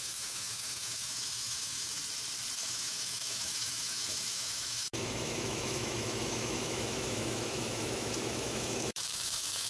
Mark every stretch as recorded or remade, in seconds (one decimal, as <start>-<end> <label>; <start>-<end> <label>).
0.0-2.0 remade; 2.0-2.6 recorded; 2.6-9.7 remade